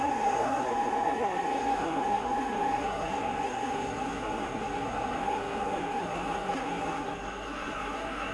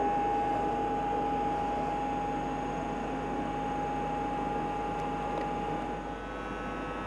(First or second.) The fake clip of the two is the first